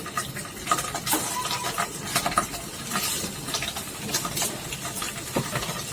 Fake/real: real